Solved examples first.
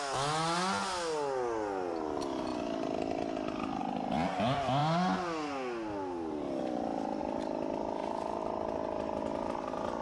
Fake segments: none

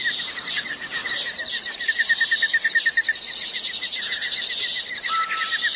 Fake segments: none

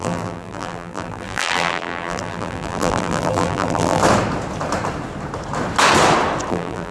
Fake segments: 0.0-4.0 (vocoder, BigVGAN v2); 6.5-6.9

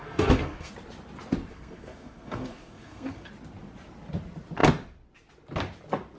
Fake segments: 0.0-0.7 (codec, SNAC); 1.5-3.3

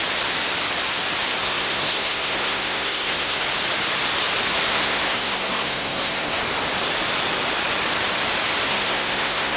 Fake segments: 1.4-3.4 (codec, SNAC); 4.7-6.4; 8.7-9.6

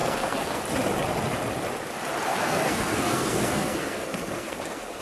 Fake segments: 0.0-0.6 (codec, SNAC); 2.3-5.0